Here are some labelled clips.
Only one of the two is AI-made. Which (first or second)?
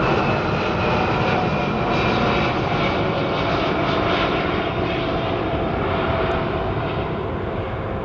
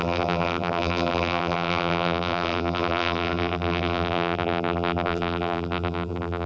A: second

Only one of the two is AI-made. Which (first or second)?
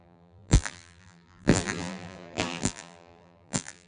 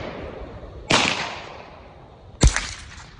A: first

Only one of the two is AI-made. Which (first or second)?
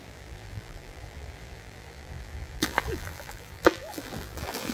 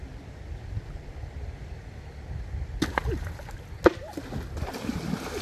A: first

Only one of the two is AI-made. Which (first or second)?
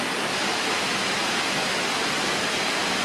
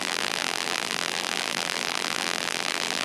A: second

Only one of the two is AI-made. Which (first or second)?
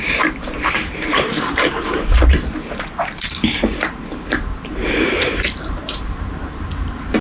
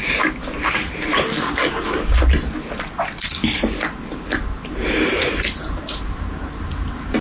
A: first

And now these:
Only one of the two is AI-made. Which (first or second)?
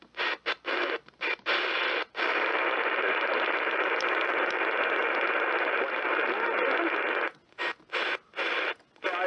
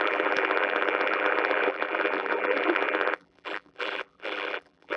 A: second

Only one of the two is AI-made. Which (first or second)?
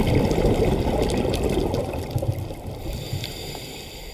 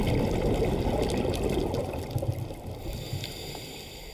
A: first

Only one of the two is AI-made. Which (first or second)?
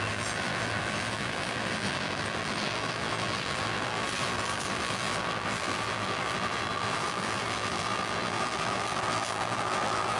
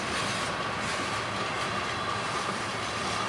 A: first